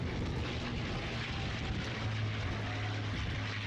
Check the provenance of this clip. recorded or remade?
recorded